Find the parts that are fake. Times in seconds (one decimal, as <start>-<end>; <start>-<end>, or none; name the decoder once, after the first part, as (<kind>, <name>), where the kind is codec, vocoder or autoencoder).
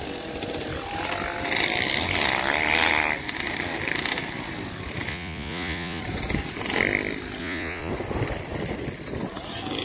5.1-6.0 (vocoder, Vocos); 7.4-7.9